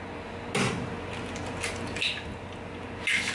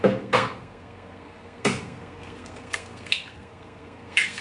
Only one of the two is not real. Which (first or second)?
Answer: second